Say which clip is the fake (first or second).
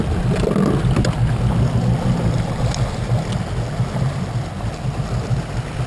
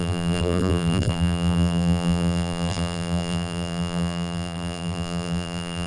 second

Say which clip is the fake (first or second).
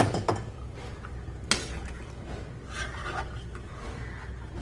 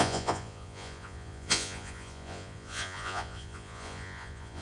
second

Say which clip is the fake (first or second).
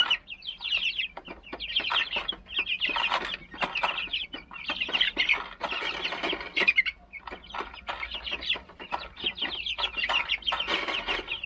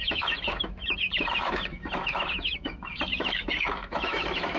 second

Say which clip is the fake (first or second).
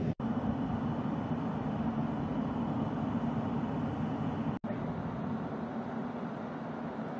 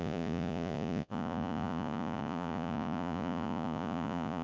second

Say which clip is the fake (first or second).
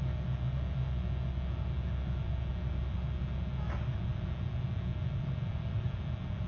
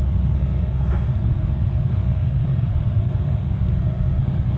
second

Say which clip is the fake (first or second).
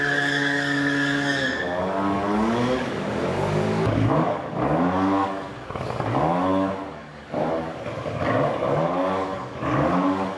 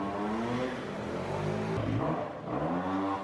first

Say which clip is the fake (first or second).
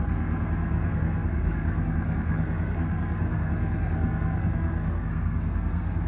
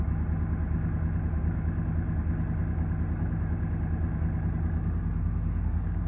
first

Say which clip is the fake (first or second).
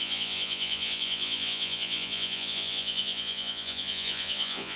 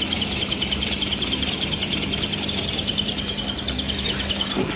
first